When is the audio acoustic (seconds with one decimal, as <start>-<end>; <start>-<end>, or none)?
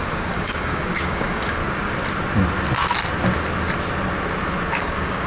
1.6-4.8